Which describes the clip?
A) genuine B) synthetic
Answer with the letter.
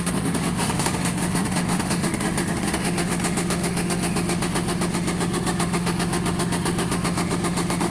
B